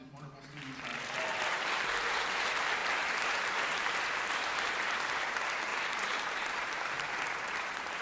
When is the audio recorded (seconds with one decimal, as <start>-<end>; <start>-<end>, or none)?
0.0-2.8; 4.7-5.7; 7.1-8.0